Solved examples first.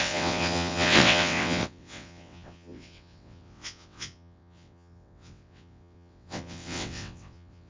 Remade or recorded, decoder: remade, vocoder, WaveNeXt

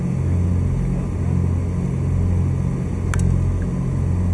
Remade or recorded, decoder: recorded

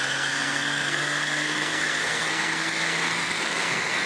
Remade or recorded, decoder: remade, codec, SNAC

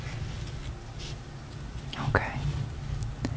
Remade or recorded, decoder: recorded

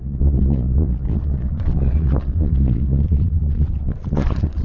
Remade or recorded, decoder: remade, vocoder, Vocos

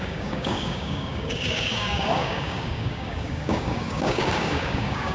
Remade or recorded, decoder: remade, codec, DAC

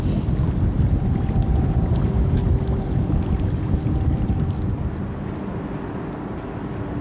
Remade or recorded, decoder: recorded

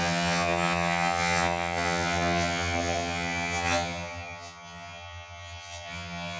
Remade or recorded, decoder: remade, vocoder, HiFi-GAN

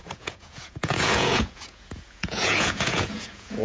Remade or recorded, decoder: remade, vocoder, Vocos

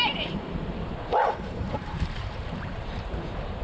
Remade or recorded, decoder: remade, vocoder, BigVGAN v2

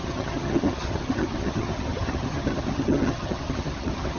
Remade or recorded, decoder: remade, vocoder, HiFi-GAN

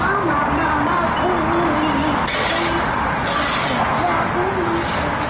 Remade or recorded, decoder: recorded